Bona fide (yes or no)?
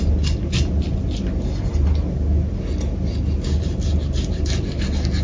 yes